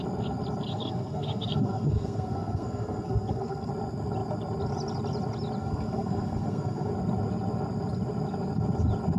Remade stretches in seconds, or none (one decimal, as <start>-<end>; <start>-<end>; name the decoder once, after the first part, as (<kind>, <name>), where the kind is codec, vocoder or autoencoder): 0.7-3.7 (codec, SNAC); 5.6-6.9